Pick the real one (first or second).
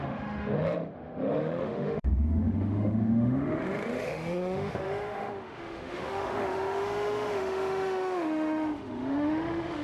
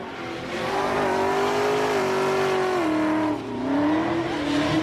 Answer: second